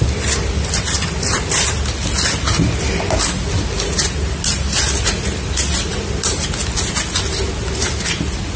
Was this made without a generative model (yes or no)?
yes